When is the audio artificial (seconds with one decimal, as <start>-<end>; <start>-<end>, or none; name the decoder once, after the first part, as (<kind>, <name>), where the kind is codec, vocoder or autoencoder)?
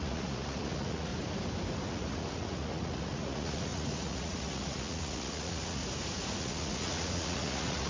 0.0-1.1 (vocoder, Vocos); 1.9-5.8; 6.4-7.9